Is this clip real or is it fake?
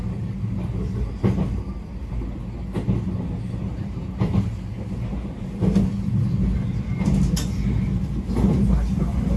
real